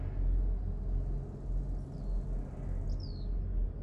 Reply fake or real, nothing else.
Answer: real